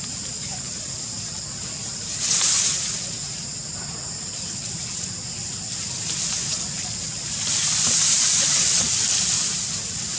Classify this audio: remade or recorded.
recorded